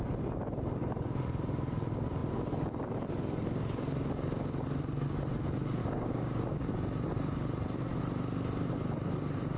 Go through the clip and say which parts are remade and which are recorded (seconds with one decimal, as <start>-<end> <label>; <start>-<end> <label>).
0.0-5.8 recorded; 5.8-6.7 remade; 6.7-9.6 recorded